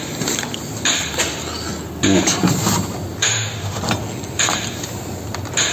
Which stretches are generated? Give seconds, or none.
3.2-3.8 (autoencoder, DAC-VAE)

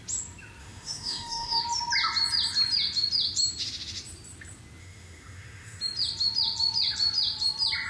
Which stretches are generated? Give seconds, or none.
0.6-1.6 (autoencoder, DAC-VAE); 4.8-5.8

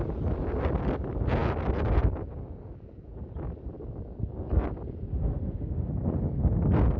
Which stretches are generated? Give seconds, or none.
5.1-5.9 (autoencoder, DAC-VAE)

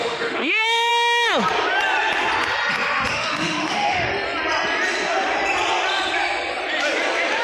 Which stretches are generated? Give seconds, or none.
0.0-0.9 (autoencoder, DAC-VAE); 3.1-4.1

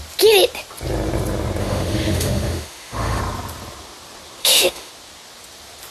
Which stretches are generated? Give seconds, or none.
1.6-3.2 (autoencoder, DAC-VAE); 4.4-4.9

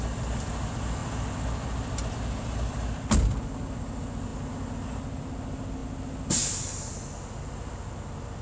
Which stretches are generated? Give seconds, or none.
none

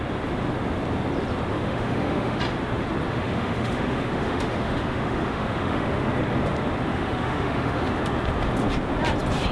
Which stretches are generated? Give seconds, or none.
1.5-2.4 (autoencoder, DAC-VAE); 3.1-6.1; 6.9-7.9